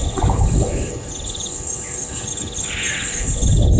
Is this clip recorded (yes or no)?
no